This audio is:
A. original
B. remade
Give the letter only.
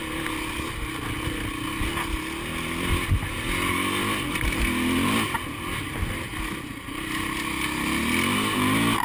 A